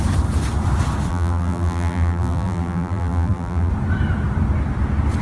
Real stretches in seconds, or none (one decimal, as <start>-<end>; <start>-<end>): 0.0-1.1; 3.7-5.2